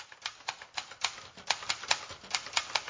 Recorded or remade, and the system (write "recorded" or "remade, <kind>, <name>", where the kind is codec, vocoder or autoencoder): recorded